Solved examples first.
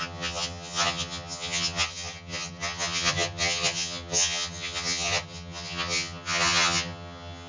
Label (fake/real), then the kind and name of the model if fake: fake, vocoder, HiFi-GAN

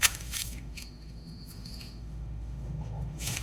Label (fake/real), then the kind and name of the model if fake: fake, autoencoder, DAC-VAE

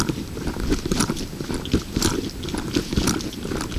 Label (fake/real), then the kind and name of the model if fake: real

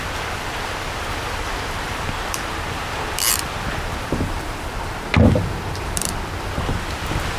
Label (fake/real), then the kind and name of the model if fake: fake, vocoder, BigVGAN v2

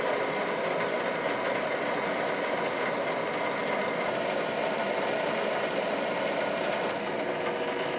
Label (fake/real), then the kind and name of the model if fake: real